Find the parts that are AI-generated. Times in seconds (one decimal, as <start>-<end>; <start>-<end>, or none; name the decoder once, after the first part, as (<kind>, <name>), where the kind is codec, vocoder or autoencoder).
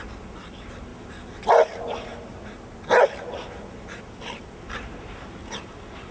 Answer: none